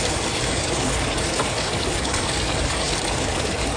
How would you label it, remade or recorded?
remade